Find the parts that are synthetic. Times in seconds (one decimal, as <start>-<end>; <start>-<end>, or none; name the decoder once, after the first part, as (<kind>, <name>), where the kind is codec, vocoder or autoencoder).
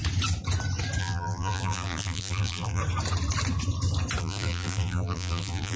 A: 1.0-2.8 (vocoder, BigVGAN v2); 4.2-5.8